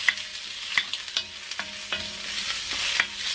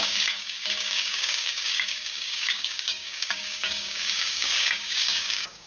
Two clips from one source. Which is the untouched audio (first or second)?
first